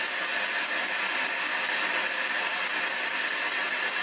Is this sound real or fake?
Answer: real